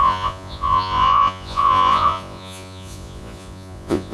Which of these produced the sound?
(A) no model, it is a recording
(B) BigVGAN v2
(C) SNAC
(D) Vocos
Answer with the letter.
D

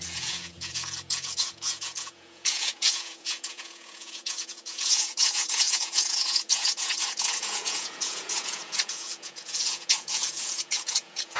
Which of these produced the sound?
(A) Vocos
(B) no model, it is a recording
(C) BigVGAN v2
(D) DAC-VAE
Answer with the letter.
A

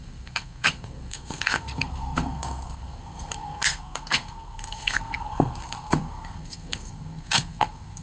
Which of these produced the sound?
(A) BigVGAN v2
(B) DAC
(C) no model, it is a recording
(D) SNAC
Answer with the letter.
D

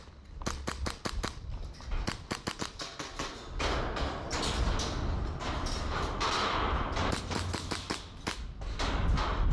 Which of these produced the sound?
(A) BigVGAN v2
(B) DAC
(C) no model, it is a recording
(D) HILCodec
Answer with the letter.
C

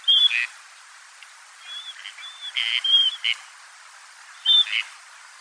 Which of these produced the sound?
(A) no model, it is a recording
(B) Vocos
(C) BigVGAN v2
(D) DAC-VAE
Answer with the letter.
A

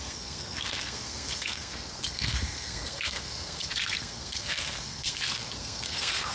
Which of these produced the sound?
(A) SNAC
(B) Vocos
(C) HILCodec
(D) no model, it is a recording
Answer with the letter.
A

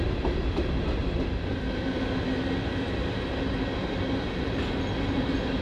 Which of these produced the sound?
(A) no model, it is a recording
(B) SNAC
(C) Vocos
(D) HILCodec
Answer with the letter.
A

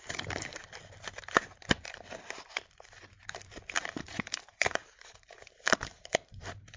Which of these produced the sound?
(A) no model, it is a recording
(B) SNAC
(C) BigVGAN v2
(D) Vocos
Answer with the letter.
C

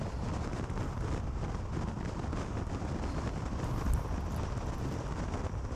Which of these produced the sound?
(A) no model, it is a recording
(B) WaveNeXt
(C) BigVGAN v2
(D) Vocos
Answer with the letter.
C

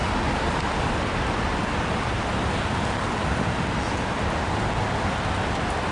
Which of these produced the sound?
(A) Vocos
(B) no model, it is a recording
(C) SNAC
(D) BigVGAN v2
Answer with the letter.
B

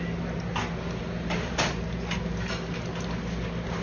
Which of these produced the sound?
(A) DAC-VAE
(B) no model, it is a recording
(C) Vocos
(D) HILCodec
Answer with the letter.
B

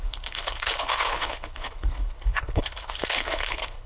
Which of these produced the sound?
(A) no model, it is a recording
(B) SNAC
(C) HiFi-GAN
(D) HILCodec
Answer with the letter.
D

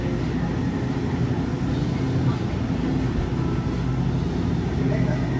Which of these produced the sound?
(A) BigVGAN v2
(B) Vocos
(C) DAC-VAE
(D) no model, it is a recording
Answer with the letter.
D